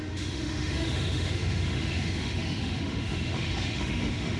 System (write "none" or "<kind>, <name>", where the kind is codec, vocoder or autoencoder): autoencoder, DAC-VAE